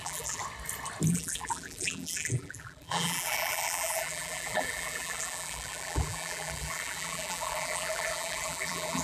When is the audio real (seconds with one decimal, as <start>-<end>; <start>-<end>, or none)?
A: 0.4-1.1